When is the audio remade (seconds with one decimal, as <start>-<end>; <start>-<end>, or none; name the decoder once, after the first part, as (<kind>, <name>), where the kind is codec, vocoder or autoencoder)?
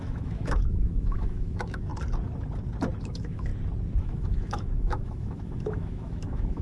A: 0.0-1.9 (autoencoder, DAC-VAE); 3.0-3.5; 4.0-6.6